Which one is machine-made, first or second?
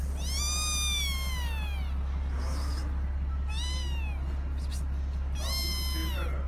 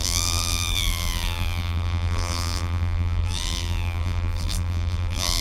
second